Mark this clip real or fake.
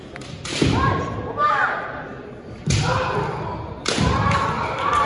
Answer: real